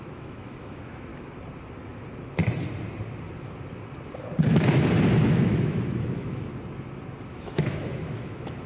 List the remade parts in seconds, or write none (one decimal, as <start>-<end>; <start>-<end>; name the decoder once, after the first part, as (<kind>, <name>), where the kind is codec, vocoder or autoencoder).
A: 0.0-1.1 (autoencoder, DAC-VAE); 5.4-6.5; 7.3-8.7